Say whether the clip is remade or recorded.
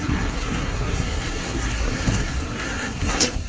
remade